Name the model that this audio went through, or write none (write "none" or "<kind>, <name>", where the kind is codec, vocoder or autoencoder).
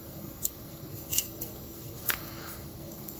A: codec, SNAC